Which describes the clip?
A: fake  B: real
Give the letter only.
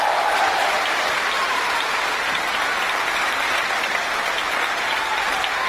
B